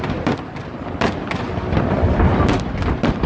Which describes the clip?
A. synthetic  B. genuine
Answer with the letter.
B